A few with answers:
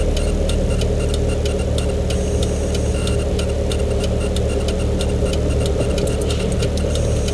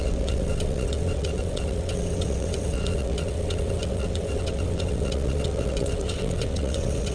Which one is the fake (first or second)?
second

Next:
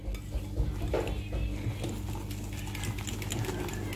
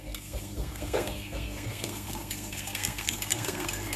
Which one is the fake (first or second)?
second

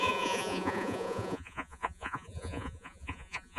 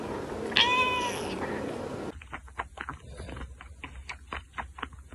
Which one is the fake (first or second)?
first